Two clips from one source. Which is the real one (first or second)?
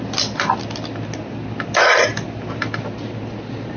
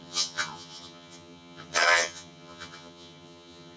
first